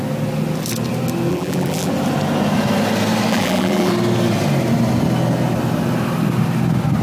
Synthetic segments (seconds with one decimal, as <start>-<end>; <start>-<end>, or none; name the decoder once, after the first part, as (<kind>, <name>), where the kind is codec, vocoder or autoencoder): 1.3-1.9 (vocoder, BigVGAN v2); 3.3-3.9